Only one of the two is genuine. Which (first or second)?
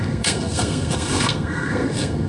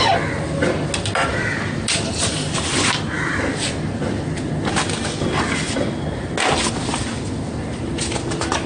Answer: second